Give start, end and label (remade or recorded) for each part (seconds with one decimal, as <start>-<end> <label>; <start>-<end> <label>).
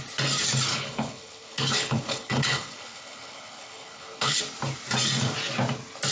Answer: 0.0-0.7 recorded; 0.7-4.4 remade; 4.4-6.1 recorded